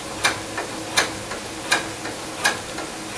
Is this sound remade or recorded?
recorded